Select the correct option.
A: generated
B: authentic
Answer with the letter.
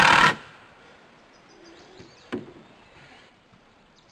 A